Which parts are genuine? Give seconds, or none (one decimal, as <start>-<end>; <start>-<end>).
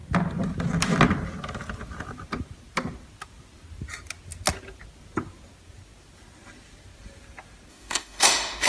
0.0-7.7